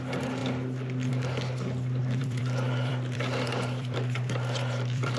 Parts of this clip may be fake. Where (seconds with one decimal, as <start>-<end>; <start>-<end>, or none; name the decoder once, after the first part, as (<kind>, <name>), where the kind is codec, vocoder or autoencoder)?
2.0-5.2 (vocoder, BigVGAN v2)